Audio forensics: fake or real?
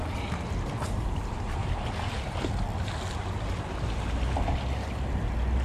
real